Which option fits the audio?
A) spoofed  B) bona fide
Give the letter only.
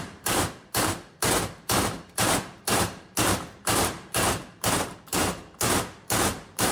A